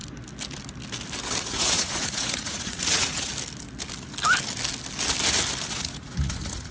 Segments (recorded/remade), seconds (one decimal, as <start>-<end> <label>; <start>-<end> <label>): 0.0-1.4 recorded; 1.4-3.3 remade; 3.3-5.7 recorded; 5.7-6.7 remade